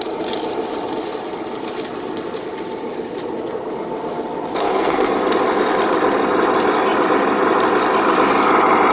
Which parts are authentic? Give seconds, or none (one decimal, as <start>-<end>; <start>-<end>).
0.0-4.6; 5.1-8.9